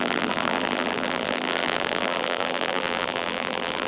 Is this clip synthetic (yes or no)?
yes